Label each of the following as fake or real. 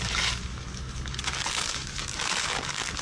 fake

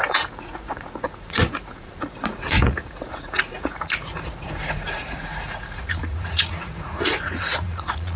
fake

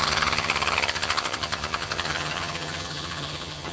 fake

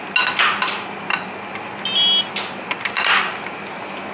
real